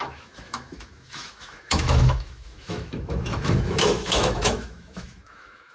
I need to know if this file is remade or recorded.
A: remade